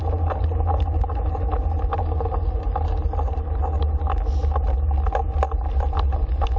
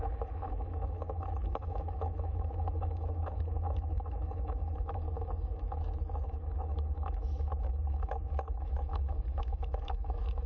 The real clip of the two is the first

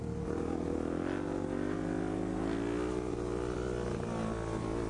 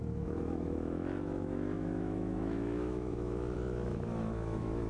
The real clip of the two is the first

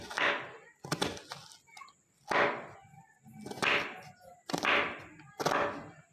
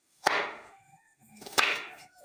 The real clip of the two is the first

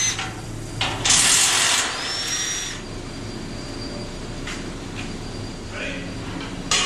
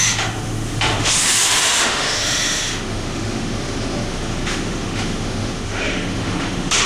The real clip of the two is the first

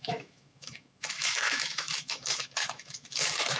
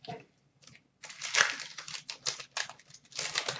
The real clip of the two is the second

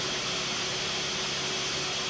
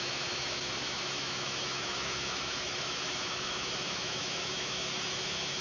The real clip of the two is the first